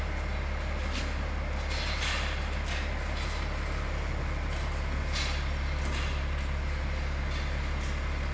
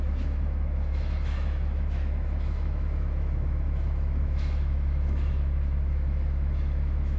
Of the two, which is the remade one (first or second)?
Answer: second